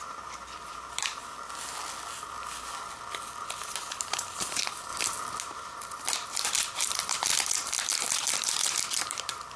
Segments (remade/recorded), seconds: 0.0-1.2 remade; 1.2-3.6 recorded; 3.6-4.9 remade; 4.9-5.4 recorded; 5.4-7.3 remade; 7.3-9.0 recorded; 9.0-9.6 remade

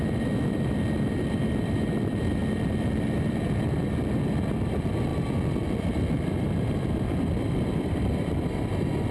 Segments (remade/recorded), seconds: 0.0-2.4 remade; 2.4-3.2 recorded; 3.2-5.1 remade; 5.1-5.8 recorded; 5.8-9.1 remade

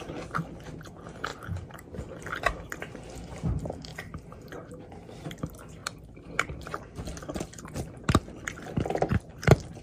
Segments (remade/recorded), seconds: 0.0-1.3 recorded; 1.3-2.0 remade; 2.0-9.8 recorded

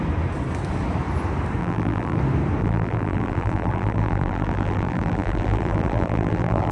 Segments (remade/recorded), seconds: 0.0-1.6 recorded; 1.6-2.2 remade; 2.2-2.6 recorded; 2.6-6.7 remade

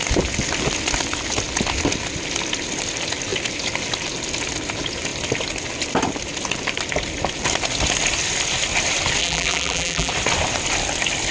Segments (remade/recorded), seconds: 0.0-9.2 recorded; 9.2-10.1 remade; 10.1-11.3 recorded

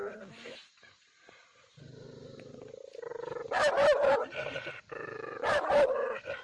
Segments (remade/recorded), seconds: 0.0-2.7 remade; 2.7-6.4 recorded